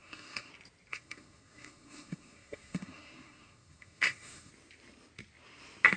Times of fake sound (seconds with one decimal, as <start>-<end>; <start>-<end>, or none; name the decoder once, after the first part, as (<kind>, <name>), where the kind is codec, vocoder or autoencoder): 0.0-0.5 (codec, SNAC); 0.9-4.5